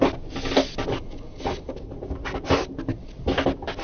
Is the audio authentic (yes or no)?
yes